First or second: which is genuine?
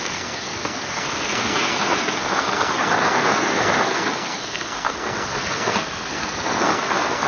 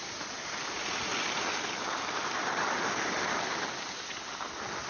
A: second